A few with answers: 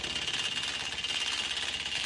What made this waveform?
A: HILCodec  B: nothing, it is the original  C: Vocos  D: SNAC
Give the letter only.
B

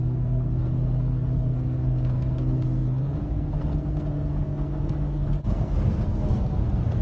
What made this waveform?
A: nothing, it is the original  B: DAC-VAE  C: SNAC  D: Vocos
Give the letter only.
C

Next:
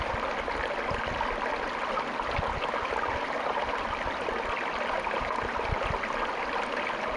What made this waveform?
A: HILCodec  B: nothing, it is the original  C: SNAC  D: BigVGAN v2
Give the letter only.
B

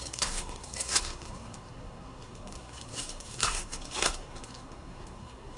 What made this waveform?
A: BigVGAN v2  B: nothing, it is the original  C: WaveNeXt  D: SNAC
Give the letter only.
D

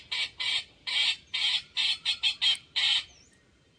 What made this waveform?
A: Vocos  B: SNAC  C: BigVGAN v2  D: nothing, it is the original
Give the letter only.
D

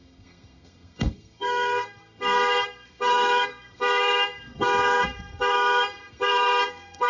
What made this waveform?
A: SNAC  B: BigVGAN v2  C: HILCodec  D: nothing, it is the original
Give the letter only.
A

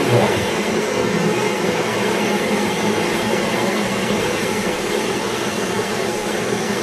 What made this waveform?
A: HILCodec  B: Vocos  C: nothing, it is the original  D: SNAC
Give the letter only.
D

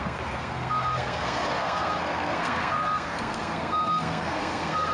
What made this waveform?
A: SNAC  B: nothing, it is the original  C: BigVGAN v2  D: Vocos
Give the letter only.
A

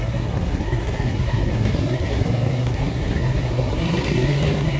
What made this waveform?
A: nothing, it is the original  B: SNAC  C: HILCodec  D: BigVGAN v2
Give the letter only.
B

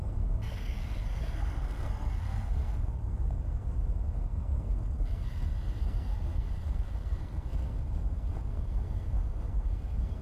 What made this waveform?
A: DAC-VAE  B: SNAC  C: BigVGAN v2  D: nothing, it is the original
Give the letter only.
B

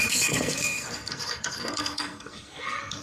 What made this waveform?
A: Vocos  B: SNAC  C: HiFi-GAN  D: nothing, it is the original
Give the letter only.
B